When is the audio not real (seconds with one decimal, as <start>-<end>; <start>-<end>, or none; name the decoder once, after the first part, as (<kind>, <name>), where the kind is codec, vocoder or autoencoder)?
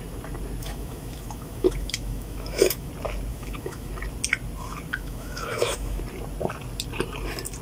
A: 0.6-2.9 (autoencoder, DAC-VAE); 3.3-3.9; 4.9-6.0